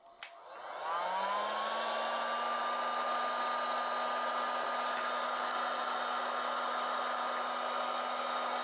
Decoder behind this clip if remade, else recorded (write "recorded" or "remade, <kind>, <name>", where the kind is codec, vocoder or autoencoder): recorded